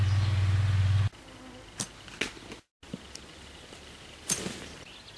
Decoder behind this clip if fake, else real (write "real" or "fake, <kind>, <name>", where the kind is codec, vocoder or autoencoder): real